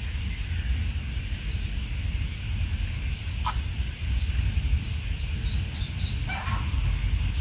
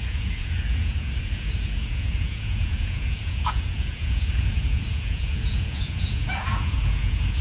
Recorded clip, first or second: first